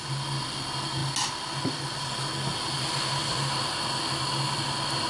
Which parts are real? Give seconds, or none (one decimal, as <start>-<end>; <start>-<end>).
0.0-5.1